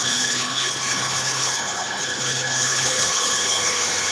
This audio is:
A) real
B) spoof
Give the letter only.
B